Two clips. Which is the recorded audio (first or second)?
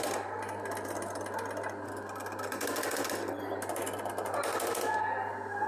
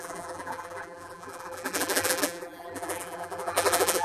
first